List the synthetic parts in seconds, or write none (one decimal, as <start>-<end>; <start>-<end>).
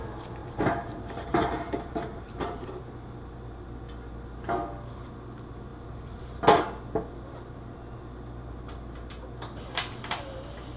0.4-2.8; 5.7-6.4